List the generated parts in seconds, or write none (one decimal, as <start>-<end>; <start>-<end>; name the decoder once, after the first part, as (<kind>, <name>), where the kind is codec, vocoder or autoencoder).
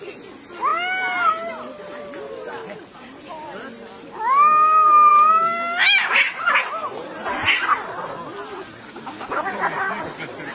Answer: none